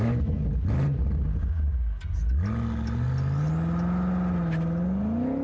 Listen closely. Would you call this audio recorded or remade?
recorded